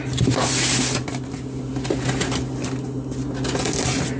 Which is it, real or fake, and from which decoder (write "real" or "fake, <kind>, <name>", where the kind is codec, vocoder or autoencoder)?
real